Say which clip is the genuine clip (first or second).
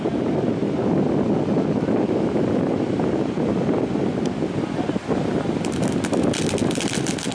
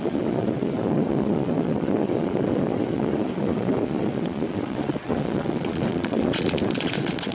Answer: first